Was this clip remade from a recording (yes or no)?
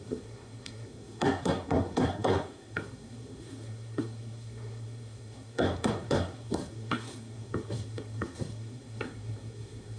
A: yes